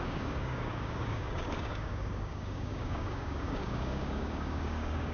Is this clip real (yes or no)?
no